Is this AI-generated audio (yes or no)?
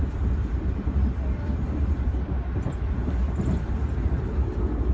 yes